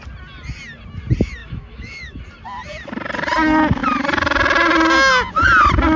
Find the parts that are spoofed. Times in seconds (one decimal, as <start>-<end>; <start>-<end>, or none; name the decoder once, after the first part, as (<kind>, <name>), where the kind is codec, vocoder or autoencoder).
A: 1.4-2.2 (autoencoder, DAC-VAE)